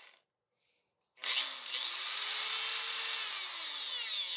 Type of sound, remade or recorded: recorded